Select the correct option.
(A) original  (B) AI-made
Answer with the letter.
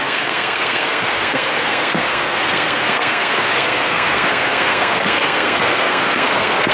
B